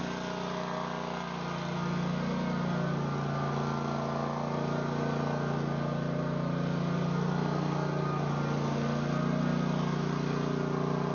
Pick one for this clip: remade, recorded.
recorded